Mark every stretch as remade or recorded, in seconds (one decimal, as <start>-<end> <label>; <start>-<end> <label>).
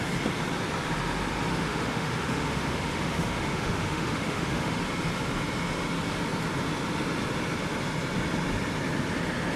0.0-1.5 recorded; 1.5-4.8 remade; 4.8-9.6 recorded